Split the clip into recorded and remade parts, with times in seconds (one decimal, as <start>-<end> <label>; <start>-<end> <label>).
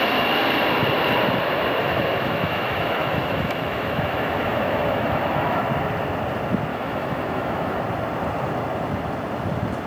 0.0-1.8 recorded; 1.8-5.6 remade; 5.6-6.7 recorded; 6.7-7.8 remade; 7.8-9.9 recorded